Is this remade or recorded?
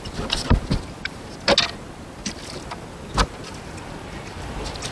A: recorded